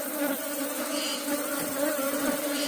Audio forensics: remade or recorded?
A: remade